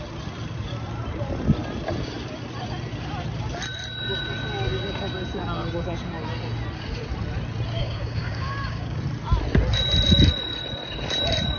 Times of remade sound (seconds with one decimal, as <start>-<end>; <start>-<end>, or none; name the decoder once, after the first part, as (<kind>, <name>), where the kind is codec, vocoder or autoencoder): 7.8-9.0 (codec, DAC)